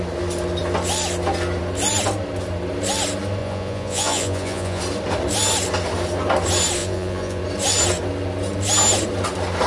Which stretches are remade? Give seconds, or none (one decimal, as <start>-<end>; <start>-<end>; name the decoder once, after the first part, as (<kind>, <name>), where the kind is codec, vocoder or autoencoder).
3.4-4.8 (vocoder, Vocos); 6.8-7.4